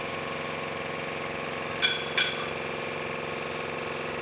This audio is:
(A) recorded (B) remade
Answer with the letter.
A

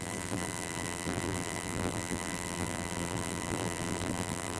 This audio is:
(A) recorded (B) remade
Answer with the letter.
B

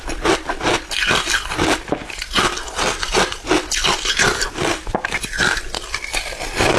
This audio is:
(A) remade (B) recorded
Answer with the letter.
B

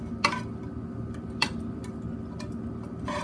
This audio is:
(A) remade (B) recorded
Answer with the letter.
B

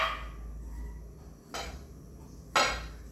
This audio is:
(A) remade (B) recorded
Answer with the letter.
B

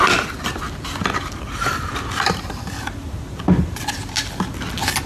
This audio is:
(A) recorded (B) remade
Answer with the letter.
A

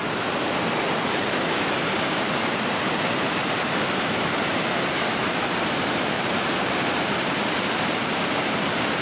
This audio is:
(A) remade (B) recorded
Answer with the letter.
A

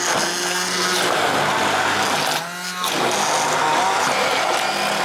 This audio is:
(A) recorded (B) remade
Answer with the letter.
A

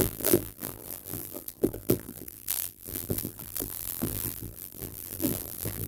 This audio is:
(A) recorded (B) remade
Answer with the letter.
B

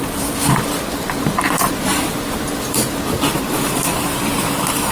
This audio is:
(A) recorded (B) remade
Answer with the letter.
B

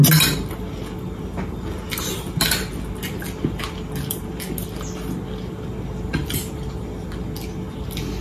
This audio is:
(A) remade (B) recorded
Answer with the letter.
B